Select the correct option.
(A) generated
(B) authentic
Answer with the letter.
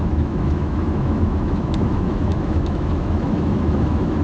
A